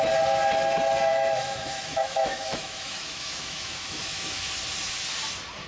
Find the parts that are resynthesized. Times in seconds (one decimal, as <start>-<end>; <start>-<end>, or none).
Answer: 1.1-4.5